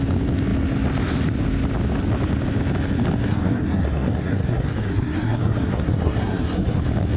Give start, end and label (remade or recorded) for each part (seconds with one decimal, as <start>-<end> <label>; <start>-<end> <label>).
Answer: 0.0-3.3 recorded; 3.3-6.8 remade; 6.8-7.2 recorded